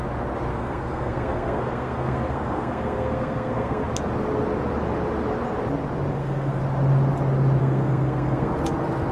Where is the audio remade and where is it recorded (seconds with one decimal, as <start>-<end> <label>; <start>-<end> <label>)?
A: 0.0-0.5 recorded; 0.5-3.9 remade; 3.9-6.1 recorded; 6.1-6.6 remade; 6.6-7.6 recorded; 7.6-8.5 remade; 8.5-9.1 recorded